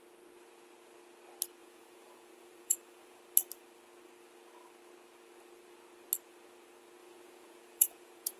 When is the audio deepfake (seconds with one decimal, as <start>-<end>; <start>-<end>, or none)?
1.6-3.2; 7.0-8.4